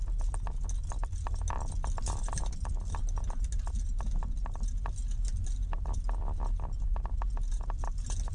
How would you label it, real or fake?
real